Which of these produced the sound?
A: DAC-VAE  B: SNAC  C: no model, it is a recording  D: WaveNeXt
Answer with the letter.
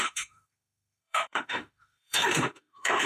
A